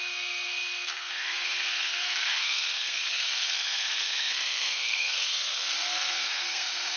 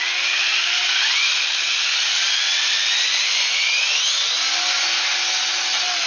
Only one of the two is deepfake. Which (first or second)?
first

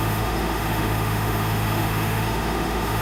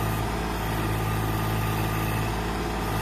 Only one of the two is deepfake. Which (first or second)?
first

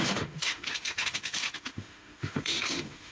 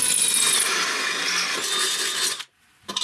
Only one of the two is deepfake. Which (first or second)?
first